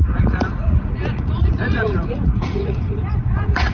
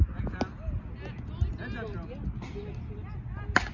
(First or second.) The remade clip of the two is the first